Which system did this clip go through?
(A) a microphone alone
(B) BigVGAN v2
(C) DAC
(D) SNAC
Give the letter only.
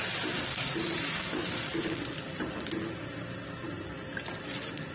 A